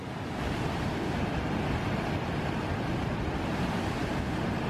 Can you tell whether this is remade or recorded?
recorded